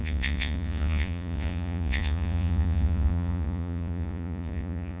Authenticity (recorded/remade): remade